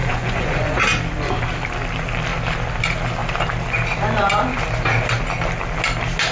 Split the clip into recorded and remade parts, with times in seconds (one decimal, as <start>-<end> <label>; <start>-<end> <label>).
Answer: 0.0-0.8 remade; 0.8-6.3 recorded